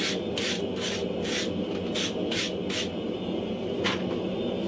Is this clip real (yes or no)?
yes